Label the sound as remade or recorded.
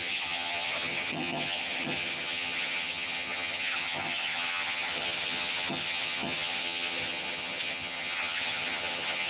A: remade